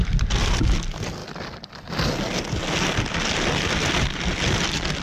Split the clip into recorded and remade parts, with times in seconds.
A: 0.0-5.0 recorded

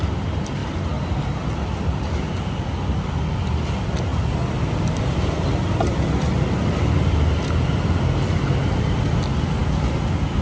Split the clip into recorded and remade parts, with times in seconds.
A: 0.0-10.4 recorded

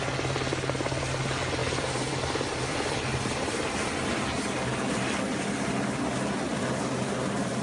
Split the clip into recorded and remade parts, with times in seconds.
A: 0.0-1.6 recorded; 1.6-3.7 remade; 3.7-6.5 recorded; 6.5-7.6 remade

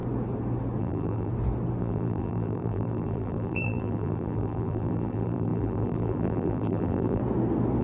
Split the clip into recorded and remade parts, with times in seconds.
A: 0.0-0.8 recorded; 0.8-1.3 remade; 1.3-1.8 recorded; 1.8-7.2 remade; 7.2-7.8 recorded

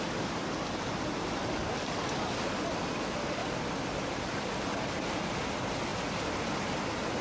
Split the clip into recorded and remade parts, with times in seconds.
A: 0.0-7.2 recorded

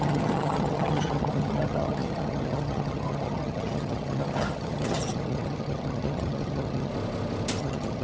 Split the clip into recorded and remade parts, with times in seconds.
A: 0.0-6.9 remade; 6.9-7.6 recorded; 7.6-8.0 remade